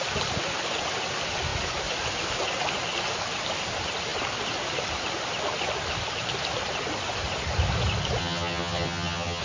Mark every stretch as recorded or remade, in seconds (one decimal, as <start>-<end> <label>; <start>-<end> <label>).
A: 0.0-8.2 recorded; 8.2-9.4 remade